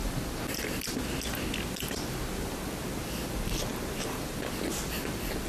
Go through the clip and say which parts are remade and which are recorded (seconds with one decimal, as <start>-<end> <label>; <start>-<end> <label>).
0.0-5.5 recorded